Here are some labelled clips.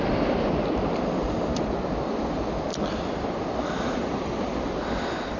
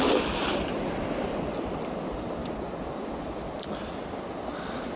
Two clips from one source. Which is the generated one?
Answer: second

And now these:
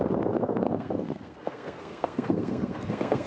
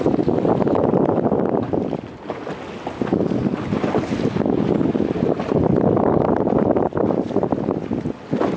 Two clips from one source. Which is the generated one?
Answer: first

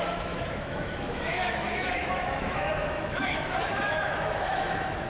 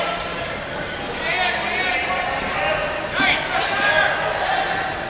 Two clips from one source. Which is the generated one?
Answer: first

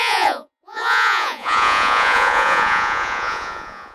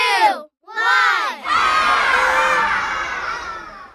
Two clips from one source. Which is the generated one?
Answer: first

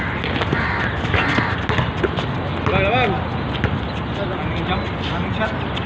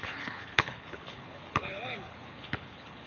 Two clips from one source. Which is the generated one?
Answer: second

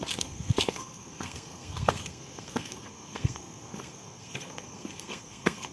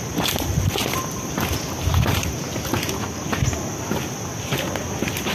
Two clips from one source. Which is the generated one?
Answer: first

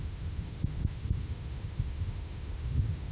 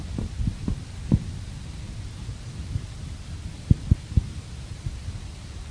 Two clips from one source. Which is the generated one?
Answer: first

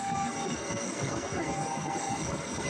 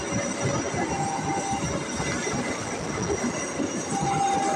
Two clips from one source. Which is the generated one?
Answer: first